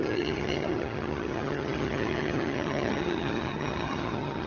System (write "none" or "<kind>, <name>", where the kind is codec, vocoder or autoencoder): vocoder, HiFi-GAN